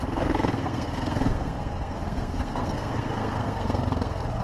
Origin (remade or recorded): remade